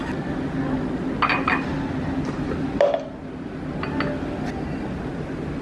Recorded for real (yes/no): yes